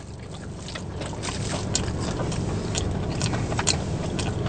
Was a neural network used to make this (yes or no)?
no